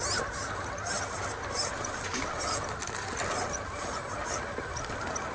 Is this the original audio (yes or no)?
yes